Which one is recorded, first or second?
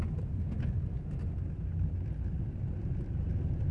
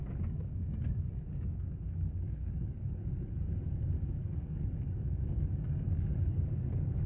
first